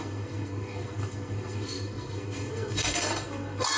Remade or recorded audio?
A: remade